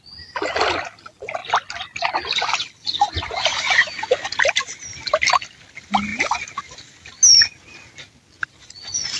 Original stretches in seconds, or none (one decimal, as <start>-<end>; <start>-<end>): 0.0-9.2